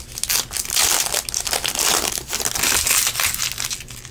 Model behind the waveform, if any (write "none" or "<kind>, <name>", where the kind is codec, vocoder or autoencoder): none